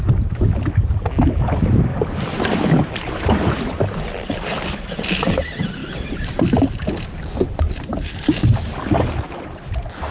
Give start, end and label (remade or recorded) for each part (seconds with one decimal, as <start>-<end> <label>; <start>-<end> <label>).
0.0-1.9 recorded; 1.9-4.4 remade; 4.4-5.8 recorded; 5.8-9.2 remade; 9.2-10.1 recorded